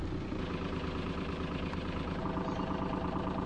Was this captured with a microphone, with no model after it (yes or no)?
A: no